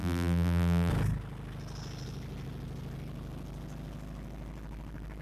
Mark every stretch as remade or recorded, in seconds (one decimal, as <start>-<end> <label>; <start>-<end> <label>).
0.0-0.9 remade; 0.9-5.2 recorded